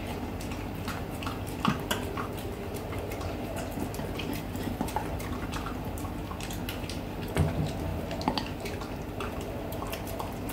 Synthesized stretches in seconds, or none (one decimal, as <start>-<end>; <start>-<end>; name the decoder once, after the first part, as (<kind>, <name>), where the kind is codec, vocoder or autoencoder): 0.0-7.9 (vocoder, BigVGAN v2); 9.0-10.5